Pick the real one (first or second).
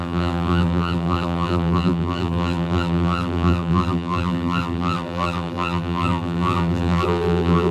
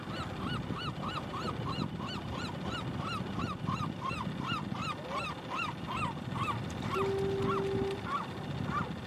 second